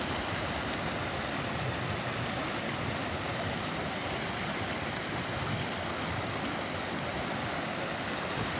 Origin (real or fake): real